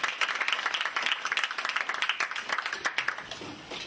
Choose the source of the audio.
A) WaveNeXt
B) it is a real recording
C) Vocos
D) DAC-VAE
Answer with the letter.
B